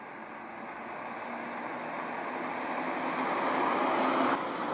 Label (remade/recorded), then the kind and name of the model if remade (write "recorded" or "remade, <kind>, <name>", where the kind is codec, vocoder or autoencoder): recorded